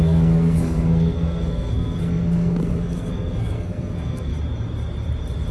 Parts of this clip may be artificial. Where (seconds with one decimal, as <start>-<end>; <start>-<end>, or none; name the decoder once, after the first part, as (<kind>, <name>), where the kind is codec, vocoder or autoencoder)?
0.0-4.3 (codec, SNAC)